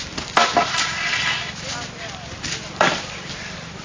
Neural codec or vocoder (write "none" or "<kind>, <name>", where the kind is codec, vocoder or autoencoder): none